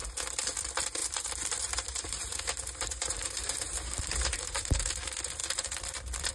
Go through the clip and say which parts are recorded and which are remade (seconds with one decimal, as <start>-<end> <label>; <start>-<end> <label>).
0.0-1.0 recorded; 1.0-4.8 remade; 4.8-6.3 recorded